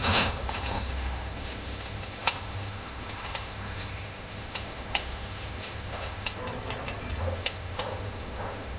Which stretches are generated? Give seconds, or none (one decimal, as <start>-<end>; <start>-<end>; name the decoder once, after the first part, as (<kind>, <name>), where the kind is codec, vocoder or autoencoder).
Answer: 0.0-6.4 (autoencoder, DAC-VAE); 7.2-8.8